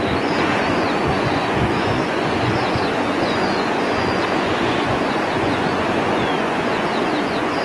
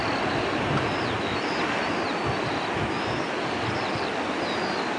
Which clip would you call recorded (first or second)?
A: second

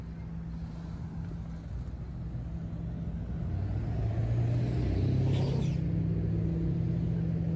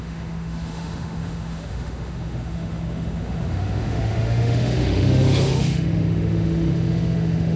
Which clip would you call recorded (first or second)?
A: first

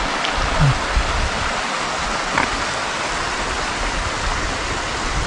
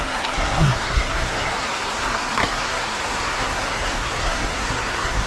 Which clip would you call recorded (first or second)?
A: first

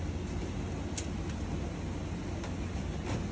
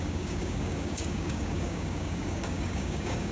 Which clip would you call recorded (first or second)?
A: first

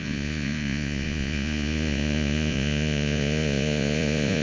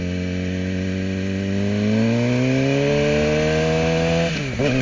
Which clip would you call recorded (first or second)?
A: second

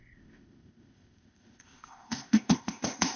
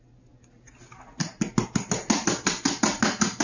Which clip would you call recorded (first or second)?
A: second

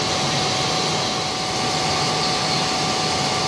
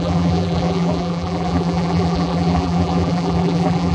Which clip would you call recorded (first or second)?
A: first